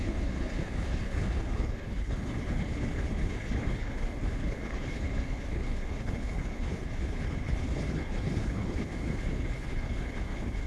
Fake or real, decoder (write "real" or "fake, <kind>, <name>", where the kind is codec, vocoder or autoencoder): fake, codec, HILCodec